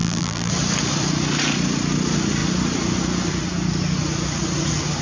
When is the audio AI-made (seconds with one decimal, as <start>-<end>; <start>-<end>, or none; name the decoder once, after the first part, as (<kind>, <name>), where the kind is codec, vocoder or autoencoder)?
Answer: 0.0-0.5 (vocoder, BigVGAN v2)